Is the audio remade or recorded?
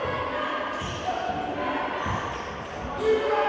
recorded